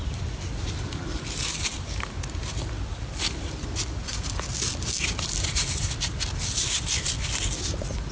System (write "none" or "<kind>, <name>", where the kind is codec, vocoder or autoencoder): none